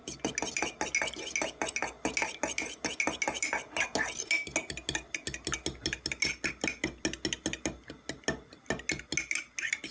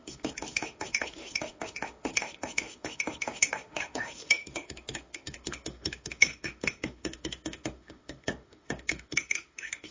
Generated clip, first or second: second